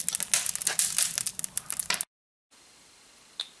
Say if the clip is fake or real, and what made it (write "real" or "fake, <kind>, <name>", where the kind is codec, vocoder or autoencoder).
real